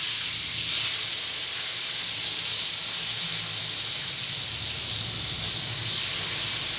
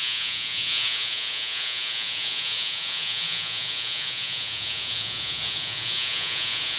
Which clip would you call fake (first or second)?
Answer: second